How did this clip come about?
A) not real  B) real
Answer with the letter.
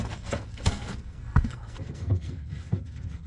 A